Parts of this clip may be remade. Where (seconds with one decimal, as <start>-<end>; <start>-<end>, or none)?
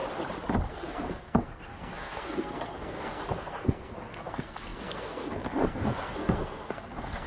0.7-7.3